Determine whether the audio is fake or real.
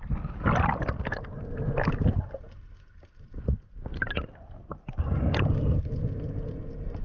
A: real